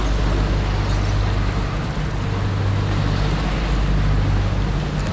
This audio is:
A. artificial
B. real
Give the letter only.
B